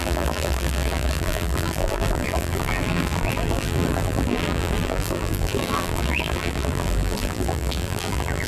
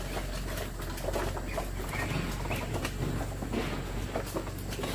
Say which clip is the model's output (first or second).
first